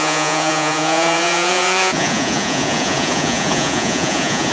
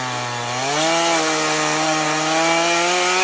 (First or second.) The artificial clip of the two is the first